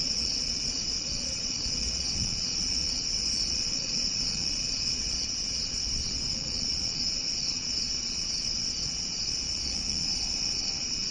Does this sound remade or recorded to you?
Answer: remade